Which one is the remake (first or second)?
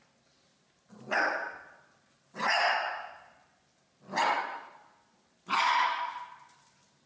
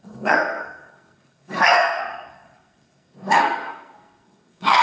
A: second